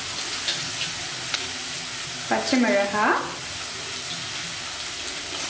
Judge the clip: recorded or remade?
recorded